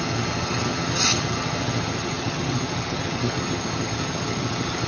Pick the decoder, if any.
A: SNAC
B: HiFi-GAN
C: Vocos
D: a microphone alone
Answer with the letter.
B